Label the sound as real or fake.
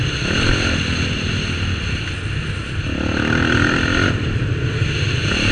real